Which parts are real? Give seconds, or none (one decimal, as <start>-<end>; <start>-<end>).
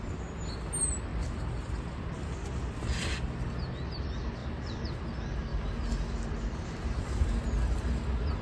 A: 0.0-1.1; 2.8-4.4; 5.1-8.4